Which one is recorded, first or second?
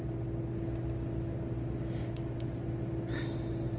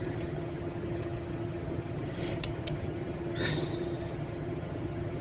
first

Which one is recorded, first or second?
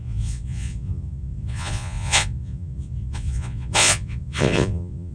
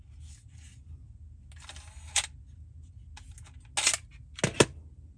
second